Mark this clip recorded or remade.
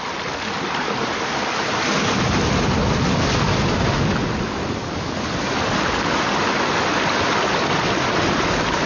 recorded